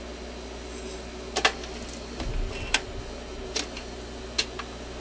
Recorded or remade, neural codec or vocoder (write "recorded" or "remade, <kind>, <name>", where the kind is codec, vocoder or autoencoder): recorded